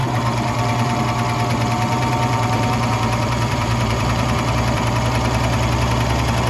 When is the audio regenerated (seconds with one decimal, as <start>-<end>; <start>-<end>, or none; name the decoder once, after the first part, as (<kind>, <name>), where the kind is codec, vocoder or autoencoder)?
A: 0.0-1.0 (vocoder, BigVGAN v2); 1.5-4.9